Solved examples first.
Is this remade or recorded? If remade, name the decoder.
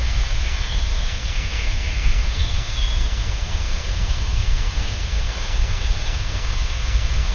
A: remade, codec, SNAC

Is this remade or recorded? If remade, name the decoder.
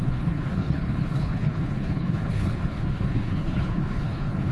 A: remade, codec, HILCodec